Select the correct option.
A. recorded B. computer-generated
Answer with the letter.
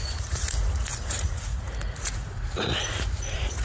B